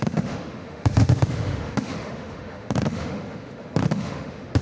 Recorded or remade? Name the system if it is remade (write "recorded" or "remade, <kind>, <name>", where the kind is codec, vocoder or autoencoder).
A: remade, autoencoder, DAC-VAE